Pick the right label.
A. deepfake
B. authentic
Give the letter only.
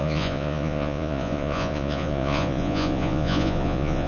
A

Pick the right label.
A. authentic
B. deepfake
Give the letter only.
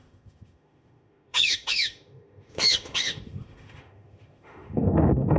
B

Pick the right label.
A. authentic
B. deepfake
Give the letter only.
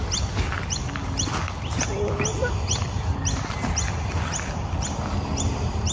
A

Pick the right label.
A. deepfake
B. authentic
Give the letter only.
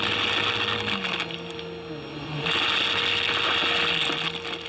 B